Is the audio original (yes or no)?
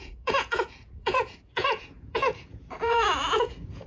no